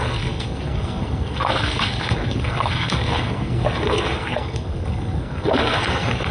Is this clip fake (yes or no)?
yes